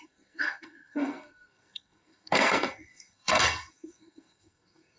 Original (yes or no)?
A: no